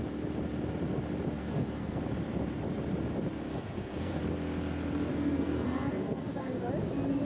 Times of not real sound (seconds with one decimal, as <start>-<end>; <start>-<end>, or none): 1.4-2.0; 3.5-4.2; 5.1-6.7